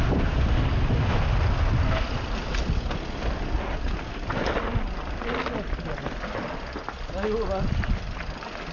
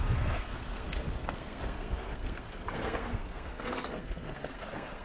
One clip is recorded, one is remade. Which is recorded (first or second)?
first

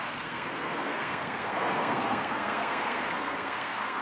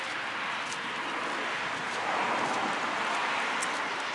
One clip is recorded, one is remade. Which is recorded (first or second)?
second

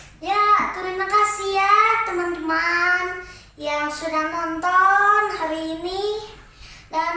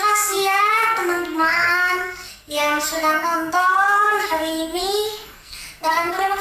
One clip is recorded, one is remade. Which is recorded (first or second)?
first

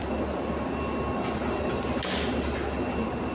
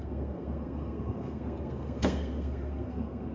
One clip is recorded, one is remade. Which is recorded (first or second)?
first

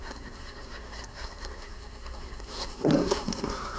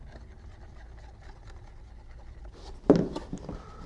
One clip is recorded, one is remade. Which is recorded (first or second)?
second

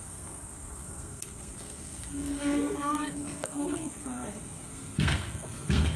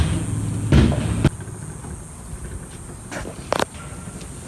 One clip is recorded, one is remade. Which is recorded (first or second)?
second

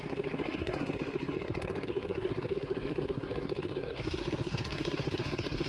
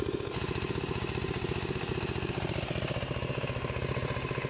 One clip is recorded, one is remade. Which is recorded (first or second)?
second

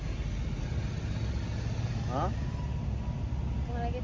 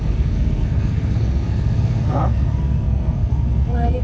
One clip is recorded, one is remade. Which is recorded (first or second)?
first